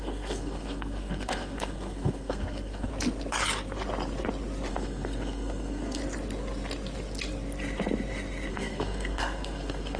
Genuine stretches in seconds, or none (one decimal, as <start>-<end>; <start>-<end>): 2.9-4.7; 6.0-8.5